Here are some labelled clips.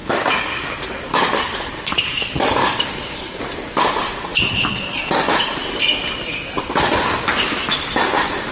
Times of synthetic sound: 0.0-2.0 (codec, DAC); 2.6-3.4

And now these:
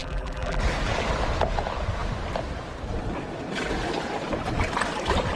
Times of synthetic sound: 0.0-0.6 (vocoder, BigVGAN v2)

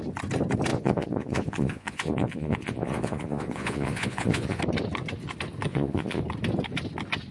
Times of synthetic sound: 0.7-4.6 (vocoder, Vocos); 5.7-6.2

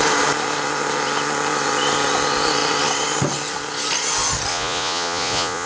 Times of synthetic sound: 4.5-5.7 (vocoder, Vocos)